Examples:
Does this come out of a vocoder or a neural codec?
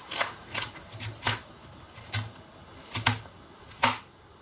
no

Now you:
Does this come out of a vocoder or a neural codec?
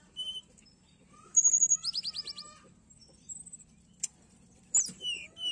yes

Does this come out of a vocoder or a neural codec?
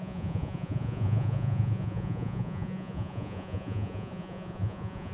yes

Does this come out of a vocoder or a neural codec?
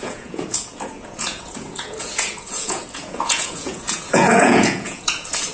yes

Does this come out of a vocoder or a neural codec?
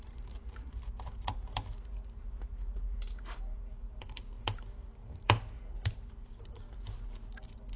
yes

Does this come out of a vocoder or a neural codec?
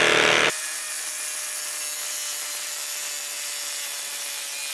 no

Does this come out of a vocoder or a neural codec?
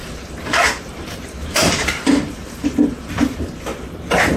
yes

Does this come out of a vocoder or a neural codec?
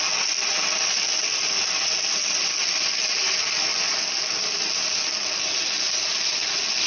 no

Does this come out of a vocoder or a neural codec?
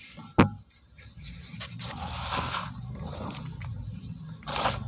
no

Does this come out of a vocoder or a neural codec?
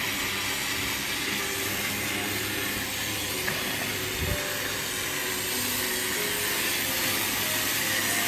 no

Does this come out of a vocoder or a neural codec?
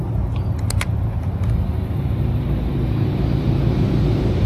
yes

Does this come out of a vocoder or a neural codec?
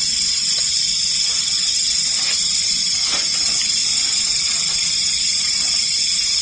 no